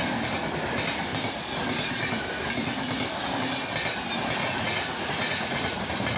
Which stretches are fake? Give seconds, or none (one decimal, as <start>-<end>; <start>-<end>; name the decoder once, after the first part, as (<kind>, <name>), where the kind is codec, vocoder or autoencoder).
4.4-5.8 (vocoder, Vocos)